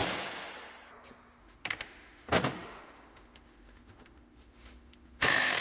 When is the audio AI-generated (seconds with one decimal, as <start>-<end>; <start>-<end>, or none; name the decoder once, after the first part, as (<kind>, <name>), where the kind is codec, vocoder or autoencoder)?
1.4-5.6 (autoencoder, DAC-VAE)